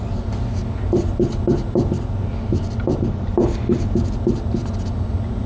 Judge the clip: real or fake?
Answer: real